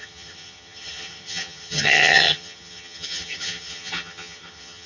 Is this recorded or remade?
remade